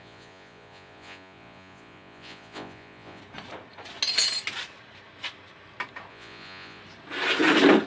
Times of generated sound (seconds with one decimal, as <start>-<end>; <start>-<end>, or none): 0.0-3.2; 6.1-6.8